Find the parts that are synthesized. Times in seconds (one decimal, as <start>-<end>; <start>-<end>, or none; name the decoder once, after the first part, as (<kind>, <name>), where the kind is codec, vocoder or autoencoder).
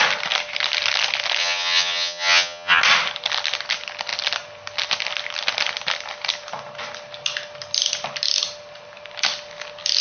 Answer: 1.4-2.8 (vocoder, HiFi-GAN)